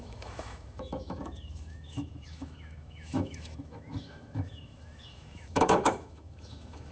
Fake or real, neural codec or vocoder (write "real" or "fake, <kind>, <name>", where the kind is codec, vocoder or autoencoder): fake, autoencoder, DAC-VAE